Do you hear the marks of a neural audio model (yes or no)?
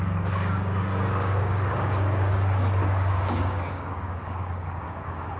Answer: yes